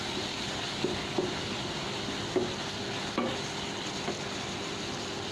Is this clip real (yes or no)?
yes